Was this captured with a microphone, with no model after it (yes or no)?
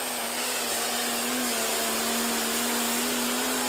yes